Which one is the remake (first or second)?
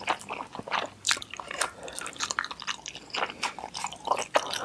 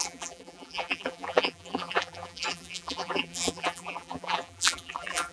second